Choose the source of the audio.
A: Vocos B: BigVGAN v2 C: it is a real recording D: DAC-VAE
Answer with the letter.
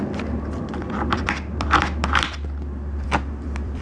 B